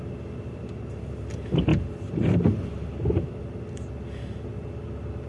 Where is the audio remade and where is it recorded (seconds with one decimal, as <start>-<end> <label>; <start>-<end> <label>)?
0.0-5.3 recorded